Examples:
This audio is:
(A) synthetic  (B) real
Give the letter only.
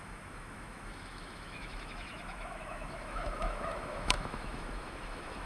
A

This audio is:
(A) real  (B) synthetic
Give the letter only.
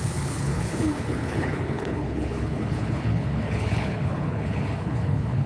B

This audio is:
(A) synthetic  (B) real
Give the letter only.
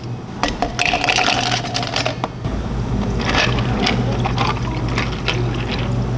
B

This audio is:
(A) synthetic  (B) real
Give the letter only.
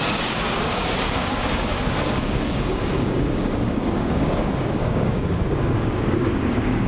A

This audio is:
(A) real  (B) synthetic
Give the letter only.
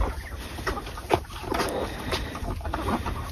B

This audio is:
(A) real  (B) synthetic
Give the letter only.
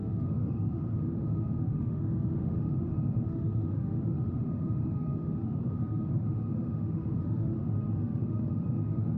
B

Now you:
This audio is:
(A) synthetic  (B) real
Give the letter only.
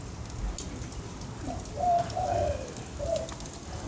B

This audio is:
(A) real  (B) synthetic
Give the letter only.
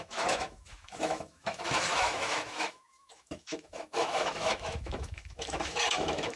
B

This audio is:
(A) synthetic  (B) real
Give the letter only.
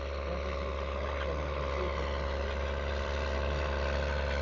B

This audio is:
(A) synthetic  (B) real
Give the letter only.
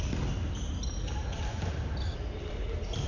B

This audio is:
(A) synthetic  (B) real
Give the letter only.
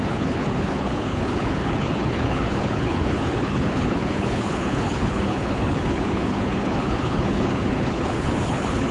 A